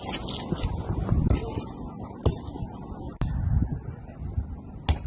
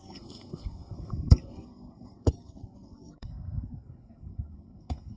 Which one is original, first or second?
first